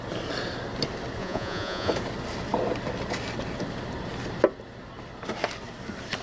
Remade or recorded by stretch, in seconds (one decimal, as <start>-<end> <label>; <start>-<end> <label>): 0.0-1.2 recorded; 1.2-1.9 remade; 1.9-6.2 recorded